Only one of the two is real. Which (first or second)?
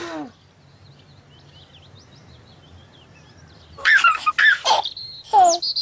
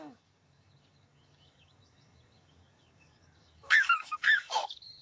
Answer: first